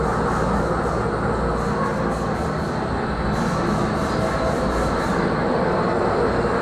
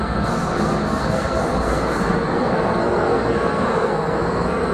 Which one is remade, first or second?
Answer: second